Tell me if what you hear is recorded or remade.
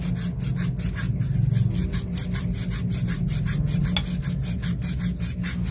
recorded